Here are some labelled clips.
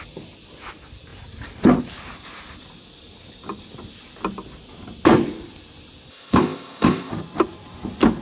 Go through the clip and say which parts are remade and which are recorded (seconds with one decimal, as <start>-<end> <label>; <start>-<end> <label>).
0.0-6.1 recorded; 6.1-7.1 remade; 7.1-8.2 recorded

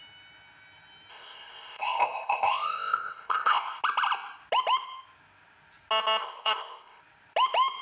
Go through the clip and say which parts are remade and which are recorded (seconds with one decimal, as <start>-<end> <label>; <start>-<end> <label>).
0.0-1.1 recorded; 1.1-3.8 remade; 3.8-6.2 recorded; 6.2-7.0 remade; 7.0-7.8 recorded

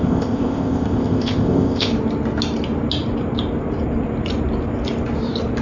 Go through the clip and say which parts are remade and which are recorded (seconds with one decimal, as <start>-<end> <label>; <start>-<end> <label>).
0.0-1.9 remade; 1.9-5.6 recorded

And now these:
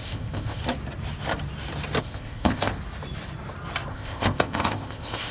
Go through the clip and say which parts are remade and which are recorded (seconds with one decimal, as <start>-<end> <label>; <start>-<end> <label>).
0.0-0.6 remade; 0.6-2.0 recorded; 2.0-2.7 remade; 2.7-3.9 recorded; 3.9-5.3 remade

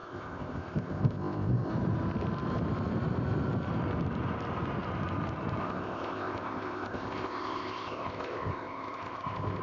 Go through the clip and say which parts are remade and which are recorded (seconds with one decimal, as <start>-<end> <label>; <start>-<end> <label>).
0.0-1.7 remade; 1.7-5.6 recorded; 5.6-9.6 remade